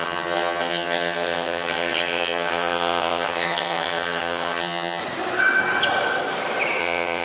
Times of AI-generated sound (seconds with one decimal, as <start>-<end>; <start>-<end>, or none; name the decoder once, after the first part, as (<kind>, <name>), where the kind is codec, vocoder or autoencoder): 0.0-5.0 (vocoder, HiFi-GAN); 6.8-7.2